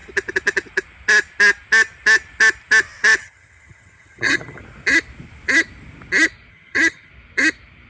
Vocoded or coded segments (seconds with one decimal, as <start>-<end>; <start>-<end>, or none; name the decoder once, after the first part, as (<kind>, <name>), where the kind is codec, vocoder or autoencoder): 3.2-4.6 (vocoder, HiFi-GAN); 6.5-7.1